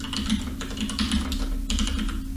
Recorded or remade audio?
recorded